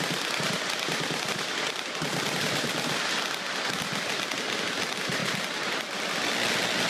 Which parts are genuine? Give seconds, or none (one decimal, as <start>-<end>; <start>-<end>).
0.0-6.9